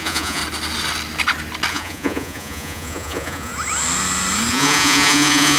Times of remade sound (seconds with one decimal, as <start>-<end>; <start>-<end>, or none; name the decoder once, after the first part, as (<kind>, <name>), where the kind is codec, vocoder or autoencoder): 0.0-0.4 (vocoder, Vocos); 1.7-3.5; 4.5-5.6

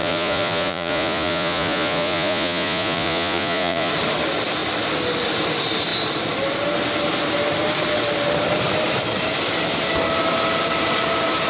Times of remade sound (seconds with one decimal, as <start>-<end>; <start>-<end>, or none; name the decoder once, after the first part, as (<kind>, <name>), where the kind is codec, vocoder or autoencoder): 0.0-3.9 (vocoder, Vocos)

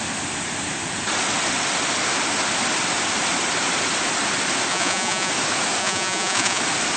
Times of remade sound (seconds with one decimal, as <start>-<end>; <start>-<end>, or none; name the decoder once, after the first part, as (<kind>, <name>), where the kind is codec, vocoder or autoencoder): 4.7-5.3 (vocoder, Vocos); 5.8-6.6

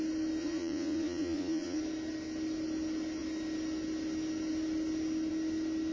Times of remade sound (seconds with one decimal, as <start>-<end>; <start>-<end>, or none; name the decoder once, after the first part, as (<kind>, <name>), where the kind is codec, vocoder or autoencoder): 0.4-1.8 (vocoder, Vocos)

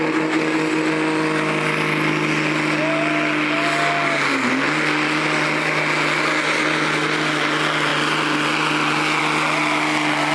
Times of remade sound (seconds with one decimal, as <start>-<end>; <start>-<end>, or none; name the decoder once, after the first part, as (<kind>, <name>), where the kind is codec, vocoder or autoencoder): none